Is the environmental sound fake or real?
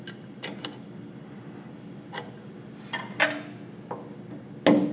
real